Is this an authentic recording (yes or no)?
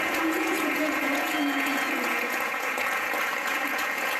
no